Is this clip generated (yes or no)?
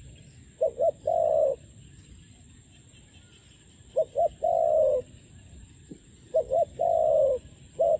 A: no